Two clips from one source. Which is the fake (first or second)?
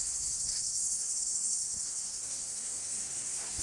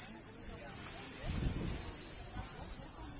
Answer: first